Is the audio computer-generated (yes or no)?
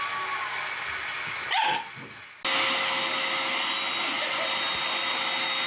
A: no